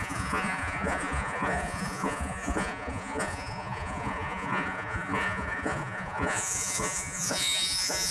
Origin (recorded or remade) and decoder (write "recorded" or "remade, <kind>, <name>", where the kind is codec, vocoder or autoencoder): remade, vocoder, Vocos